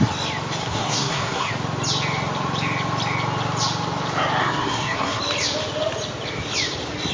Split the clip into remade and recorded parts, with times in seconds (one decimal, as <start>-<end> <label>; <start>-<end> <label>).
0.0-0.6 recorded; 0.6-1.5 remade; 1.5-4.4 recorded; 4.4-5.2 remade; 5.2-7.1 recorded